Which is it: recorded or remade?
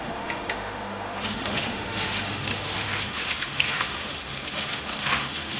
remade